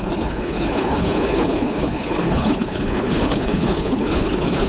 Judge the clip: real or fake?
fake